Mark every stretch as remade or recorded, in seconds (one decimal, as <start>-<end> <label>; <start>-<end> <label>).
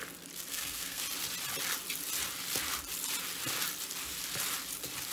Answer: 0.0-0.5 recorded; 0.5-1.0 remade; 1.0-5.1 recorded